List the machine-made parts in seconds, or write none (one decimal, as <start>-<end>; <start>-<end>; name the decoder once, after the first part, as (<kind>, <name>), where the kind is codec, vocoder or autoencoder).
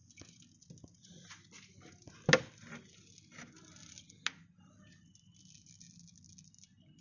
none